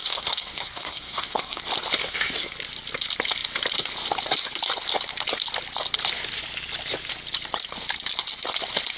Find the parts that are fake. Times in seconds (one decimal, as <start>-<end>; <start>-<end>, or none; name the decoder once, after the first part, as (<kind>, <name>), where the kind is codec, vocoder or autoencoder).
0.0-1.6 (codec, SNAC); 2.0-2.5